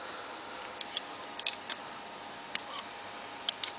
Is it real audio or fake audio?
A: real